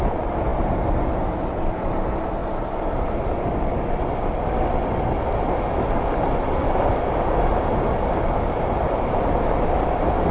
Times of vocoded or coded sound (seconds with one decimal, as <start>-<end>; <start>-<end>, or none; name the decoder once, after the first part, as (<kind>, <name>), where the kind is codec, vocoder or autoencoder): none